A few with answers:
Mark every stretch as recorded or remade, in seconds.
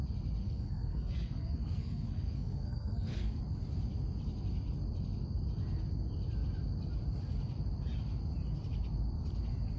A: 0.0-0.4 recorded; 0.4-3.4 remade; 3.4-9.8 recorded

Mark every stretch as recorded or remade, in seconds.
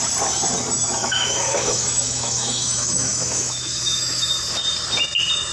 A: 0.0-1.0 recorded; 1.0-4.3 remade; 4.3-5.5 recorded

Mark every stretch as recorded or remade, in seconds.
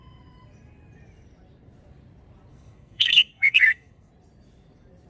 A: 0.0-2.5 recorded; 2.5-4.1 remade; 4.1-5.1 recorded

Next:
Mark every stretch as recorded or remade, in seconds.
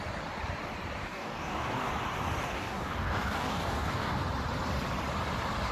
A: 0.0-1.0 recorded; 1.0-1.9 remade; 1.9-2.4 recorded; 2.4-4.2 remade; 4.2-5.7 recorded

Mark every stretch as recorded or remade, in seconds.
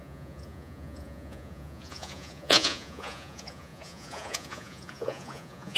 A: 0.0-5.8 remade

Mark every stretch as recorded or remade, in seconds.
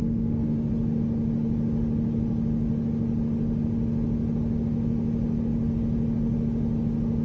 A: 0.0-0.7 remade; 0.7-7.2 recorded